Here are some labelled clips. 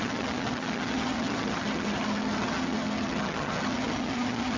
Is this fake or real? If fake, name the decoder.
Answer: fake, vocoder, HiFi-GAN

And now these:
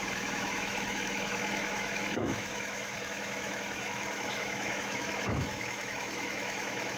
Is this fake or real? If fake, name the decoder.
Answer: fake, autoencoder, DAC-VAE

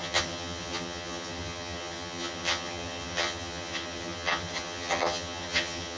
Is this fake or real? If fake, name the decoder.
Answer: fake, vocoder, HiFi-GAN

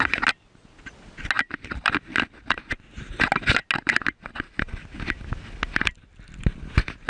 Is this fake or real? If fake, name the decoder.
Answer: real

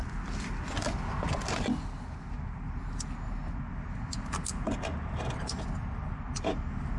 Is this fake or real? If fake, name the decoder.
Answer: real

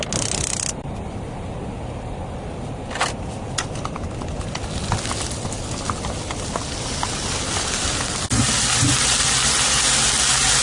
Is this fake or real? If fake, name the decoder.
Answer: real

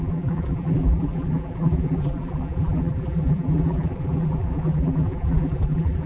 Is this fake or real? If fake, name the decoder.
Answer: fake, vocoder, BigVGAN v2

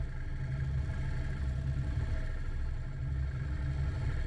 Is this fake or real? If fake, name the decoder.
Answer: real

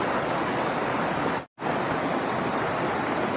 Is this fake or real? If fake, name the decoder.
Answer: real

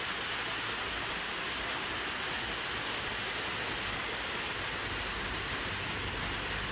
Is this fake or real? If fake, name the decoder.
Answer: real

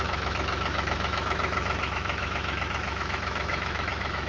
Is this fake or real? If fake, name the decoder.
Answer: fake, autoencoder, DAC-VAE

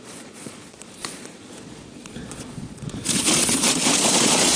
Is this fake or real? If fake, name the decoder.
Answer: fake, vocoder, Vocos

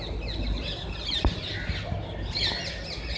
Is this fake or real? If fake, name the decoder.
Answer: real